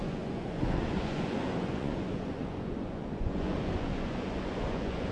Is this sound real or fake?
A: fake